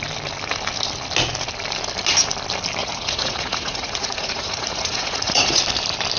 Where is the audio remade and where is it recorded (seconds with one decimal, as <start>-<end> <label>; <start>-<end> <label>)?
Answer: 0.0-2.8 recorded; 2.8-5.6 remade; 5.6-6.2 recorded